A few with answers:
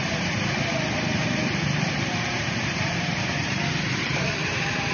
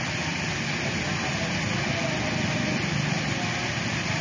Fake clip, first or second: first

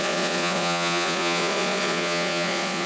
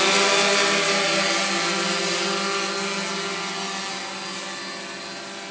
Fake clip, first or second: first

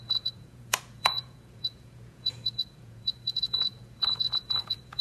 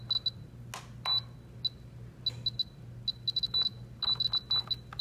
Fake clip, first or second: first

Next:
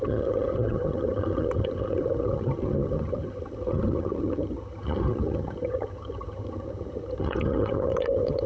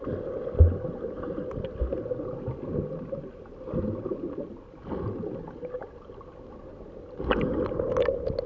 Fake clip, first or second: first